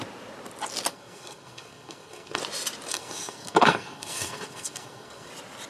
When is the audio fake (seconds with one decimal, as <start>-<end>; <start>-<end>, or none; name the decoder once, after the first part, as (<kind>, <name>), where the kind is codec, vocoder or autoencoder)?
0.9-2.4 (codec, SNAC); 2.9-5.3